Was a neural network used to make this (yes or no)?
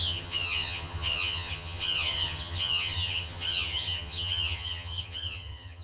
yes